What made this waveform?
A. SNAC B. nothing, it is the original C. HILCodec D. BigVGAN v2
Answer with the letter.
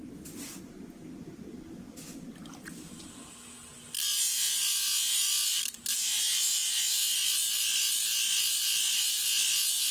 B